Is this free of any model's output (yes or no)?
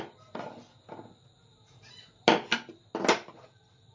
yes